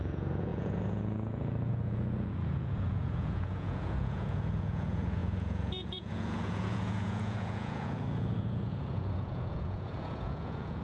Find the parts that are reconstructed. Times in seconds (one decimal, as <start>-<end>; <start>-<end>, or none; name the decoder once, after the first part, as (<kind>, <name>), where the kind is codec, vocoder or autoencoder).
0.0-10.8 (vocoder, Vocos)